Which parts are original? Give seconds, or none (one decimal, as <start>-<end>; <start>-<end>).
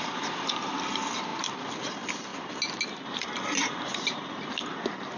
1.3-1.9; 2.3-3.1